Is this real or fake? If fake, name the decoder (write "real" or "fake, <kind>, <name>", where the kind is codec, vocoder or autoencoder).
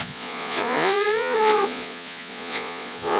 fake, vocoder, Vocos